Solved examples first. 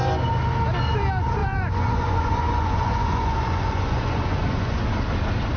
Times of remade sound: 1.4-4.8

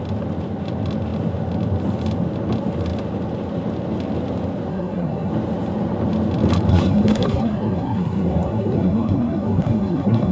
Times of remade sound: 4.7-5.3; 6.7-10.3

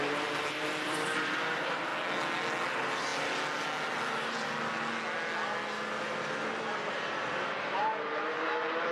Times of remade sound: 0.0-1.9; 2.7-3.1; 6.9-8.9

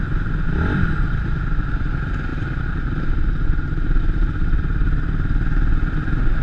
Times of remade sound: 2.3-6.4

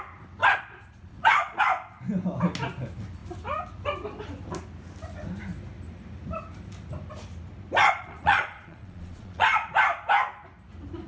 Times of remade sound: 0.4-1.6; 7.8-9.7

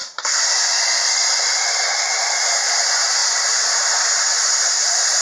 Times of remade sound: 0.0-5.2

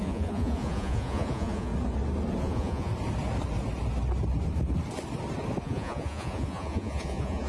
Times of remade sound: 0.0-1.7; 2.4-2.9; 5.6-7.5